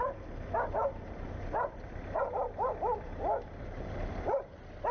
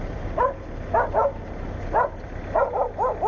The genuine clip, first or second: second